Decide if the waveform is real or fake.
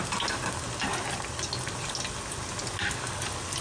real